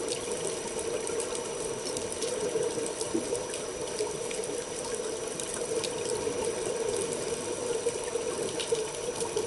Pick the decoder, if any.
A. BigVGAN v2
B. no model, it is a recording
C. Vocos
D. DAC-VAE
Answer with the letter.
B